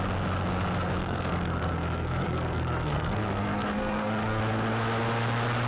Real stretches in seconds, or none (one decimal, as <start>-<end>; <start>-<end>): 0.0-1.0; 4.4-5.7